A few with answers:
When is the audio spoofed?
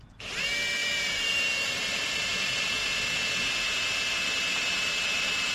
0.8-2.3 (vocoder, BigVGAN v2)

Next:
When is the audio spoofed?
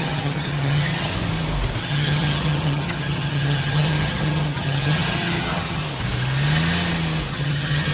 0.0-1.1 (vocoder, HiFi-GAN); 1.8-5.8; 7.3-7.9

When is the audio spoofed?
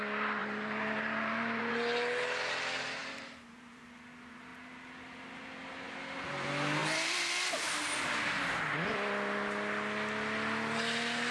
0.4-1.7 (vocoder, BigVGAN v2); 3.0-3.8; 6.8-8.1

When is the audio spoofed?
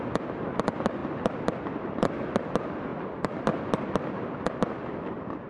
none